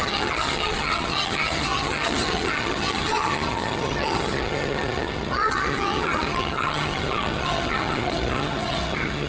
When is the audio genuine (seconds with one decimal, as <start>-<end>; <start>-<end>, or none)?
none